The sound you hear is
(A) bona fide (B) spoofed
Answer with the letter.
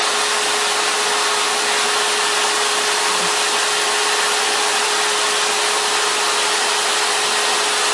A